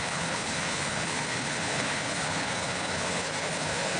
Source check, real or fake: fake